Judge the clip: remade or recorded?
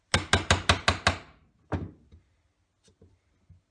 recorded